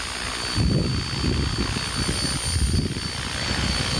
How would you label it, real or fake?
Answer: real